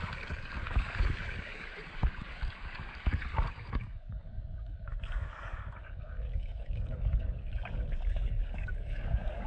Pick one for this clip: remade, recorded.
remade